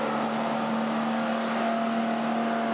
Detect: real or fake real